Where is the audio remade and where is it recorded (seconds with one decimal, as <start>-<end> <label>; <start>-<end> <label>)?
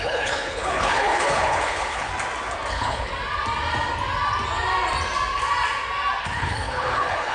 0.0-2.1 remade; 2.1-2.7 recorded; 2.7-3.1 remade; 3.1-6.2 recorded; 6.2-7.3 remade